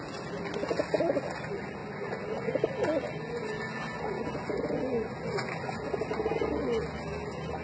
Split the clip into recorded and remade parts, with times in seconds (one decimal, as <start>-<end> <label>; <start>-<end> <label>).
0.0-7.6 recorded